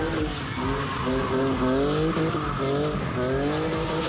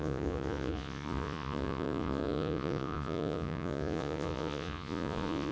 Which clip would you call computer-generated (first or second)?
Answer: second